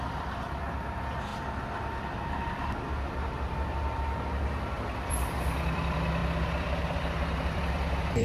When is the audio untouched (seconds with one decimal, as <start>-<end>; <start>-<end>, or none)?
1.3-5.0; 6.2-7.0